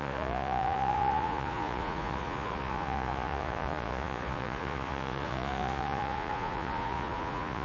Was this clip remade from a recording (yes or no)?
yes